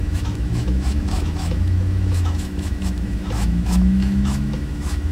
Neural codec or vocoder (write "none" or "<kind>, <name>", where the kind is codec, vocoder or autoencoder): autoencoder, DAC-VAE